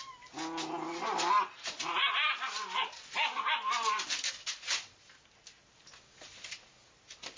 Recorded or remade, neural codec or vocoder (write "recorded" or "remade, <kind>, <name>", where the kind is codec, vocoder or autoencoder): recorded